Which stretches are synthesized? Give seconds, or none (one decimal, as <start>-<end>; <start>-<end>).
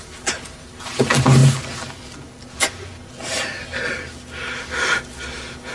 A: none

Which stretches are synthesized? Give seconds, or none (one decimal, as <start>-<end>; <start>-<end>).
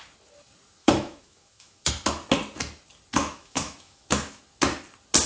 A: 0.8-1.9; 3.2-4.4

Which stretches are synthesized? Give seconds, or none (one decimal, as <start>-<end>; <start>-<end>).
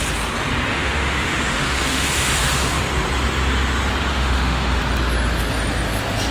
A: 0.7-2.8; 4.1-4.8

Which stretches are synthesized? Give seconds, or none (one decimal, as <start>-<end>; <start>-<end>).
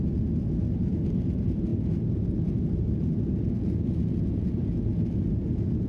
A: none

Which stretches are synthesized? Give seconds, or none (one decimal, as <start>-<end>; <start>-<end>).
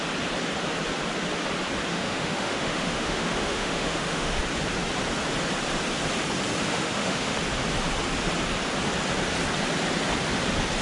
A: 1.9-4.4; 6.7-7.4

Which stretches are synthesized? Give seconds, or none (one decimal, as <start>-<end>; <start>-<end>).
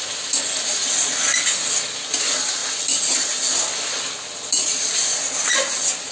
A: none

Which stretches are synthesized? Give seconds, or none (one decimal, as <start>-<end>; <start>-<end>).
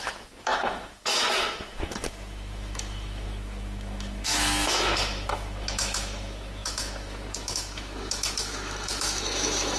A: 0.0-9.8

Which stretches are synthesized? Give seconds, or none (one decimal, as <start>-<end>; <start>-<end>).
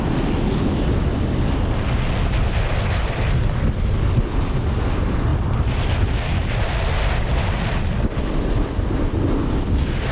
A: none